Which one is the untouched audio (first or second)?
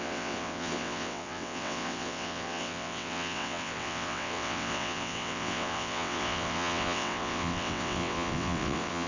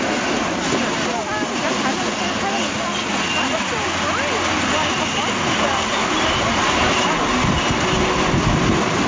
second